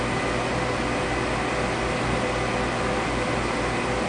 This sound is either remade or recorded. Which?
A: recorded